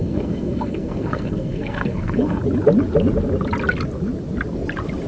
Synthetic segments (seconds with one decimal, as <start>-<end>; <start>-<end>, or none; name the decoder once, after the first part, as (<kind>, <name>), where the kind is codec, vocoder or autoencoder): 0.0-2.4 (codec, SNAC)